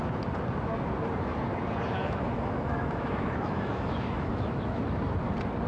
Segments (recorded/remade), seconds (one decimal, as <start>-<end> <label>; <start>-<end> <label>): 0.0-2.0 recorded; 2.0-4.8 remade; 4.8-5.7 recorded